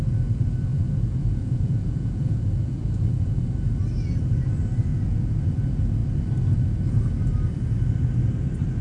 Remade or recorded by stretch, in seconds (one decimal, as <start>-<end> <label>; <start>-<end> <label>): 0.0-0.7 recorded; 0.7-3.4 remade; 3.4-4.9 recorded; 4.9-5.4 remade; 5.4-8.8 recorded